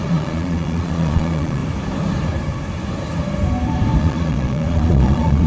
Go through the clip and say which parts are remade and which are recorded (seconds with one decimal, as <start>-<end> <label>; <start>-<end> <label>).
0.0-1.6 remade; 1.6-4.0 recorded; 4.0-5.5 remade